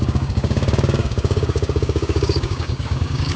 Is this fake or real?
fake